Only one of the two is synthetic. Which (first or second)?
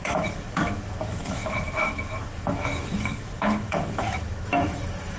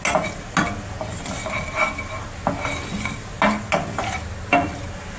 first